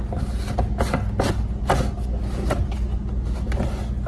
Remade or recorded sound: recorded